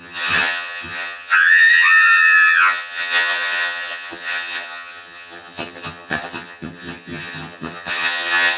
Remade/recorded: remade